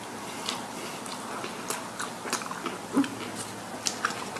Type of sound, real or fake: real